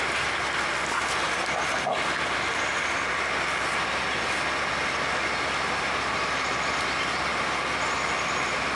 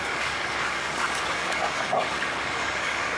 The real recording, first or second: first